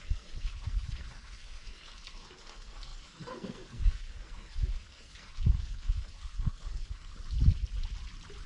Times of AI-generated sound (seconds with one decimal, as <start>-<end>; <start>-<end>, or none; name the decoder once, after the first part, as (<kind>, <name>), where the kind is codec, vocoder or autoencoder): 0.0-7.1 (codec, SNAC)